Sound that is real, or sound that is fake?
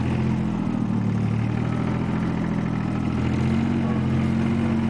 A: real